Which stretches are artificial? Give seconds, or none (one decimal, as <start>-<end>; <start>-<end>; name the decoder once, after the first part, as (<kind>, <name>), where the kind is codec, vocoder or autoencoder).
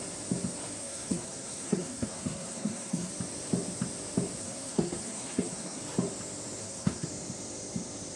0.8-3.1 (codec, SNAC); 4.4-5.8; 6.6-7.1